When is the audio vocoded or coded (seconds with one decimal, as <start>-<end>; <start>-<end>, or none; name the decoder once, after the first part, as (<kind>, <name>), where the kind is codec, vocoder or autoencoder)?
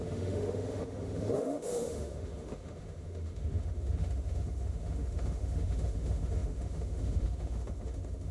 0.0-8.3 (autoencoder, DAC-VAE)